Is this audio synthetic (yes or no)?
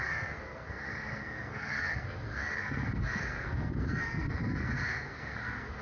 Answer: yes